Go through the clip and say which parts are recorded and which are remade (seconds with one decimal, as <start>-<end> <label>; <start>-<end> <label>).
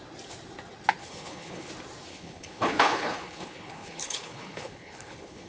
0.0-1.0 recorded; 1.0-1.7 remade; 1.7-2.1 recorded; 2.1-5.5 remade